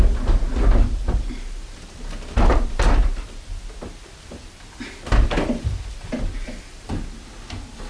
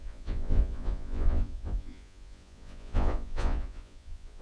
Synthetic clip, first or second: second